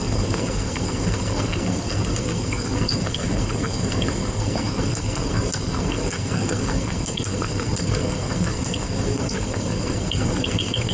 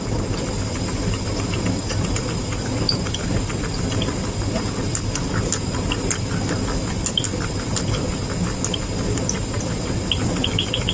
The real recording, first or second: second